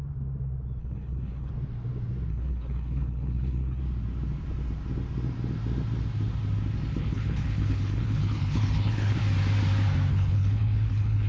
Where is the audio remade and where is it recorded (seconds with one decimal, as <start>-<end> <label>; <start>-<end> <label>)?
0.0-0.8 recorded; 0.8-1.5 remade; 1.5-2.3 recorded; 2.3-3.8 remade; 3.8-7.0 recorded; 7.0-9.2 remade; 9.2-10.1 recorded; 10.1-11.3 remade